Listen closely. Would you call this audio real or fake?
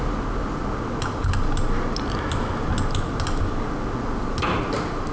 real